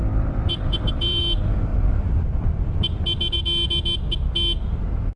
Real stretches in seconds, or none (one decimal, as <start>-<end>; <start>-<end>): 1.2-5.2